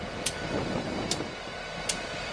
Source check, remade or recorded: recorded